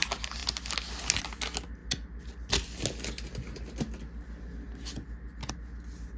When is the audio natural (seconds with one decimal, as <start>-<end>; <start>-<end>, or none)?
0.0-6.2